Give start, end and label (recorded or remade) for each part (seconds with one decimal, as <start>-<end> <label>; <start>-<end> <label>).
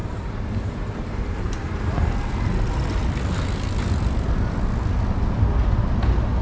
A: 0.0-2.1 remade; 2.1-6.4 recorded